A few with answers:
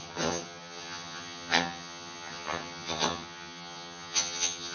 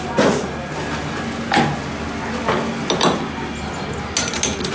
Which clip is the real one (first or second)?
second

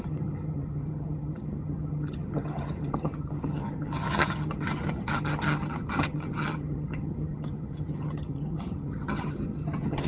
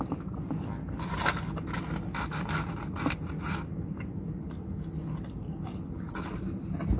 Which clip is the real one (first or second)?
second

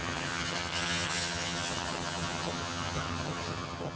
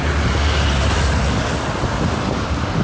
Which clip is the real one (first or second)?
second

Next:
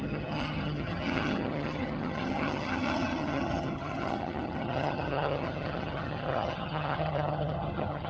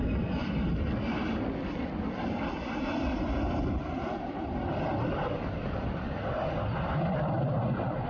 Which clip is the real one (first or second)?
second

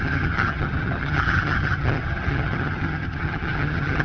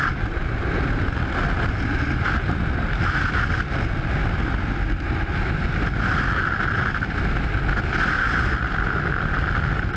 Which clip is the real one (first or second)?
second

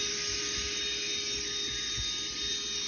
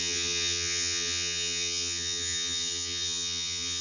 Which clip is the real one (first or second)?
first